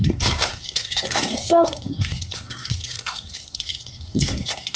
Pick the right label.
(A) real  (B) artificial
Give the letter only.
B